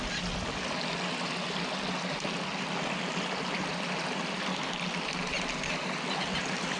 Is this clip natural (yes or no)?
yes